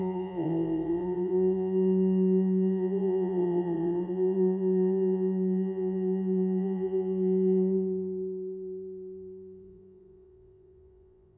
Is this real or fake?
fake